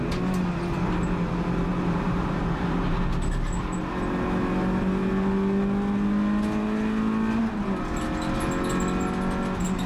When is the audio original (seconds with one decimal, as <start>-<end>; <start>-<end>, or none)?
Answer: 0.0-1.7; 3.0-9.9